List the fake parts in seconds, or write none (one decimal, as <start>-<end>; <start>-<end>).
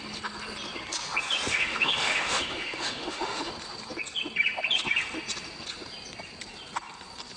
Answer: 1.5-3.5